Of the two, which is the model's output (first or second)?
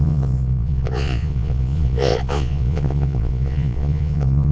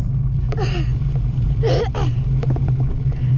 first